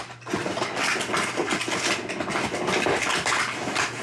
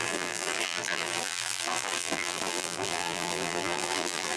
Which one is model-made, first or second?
second